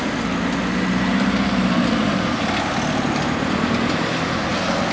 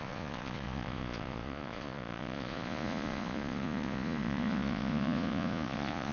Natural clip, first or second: first